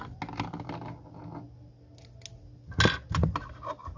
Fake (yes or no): no